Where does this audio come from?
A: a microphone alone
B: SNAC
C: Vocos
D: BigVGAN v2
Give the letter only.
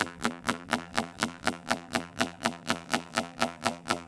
D